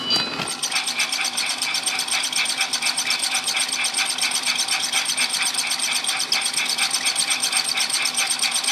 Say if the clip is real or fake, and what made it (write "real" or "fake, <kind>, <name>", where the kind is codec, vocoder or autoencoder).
real